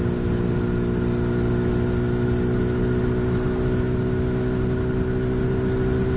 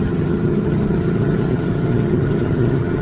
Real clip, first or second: first